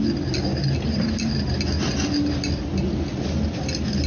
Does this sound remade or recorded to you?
recorded